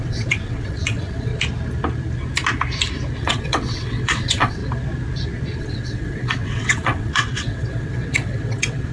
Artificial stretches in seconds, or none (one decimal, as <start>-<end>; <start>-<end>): 0.0-1.3; 3.2-4.6; 5.6-8.9